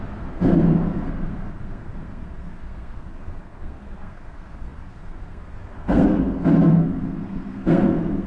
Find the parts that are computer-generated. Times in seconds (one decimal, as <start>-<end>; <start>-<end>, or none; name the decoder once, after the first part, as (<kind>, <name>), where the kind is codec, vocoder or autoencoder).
0.0-8.3 (codec, SNAC)